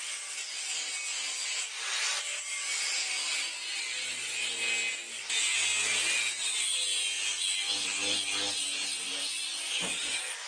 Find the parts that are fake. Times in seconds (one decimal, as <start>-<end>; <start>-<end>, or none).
none